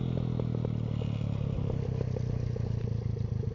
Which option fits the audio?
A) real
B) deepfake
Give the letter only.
A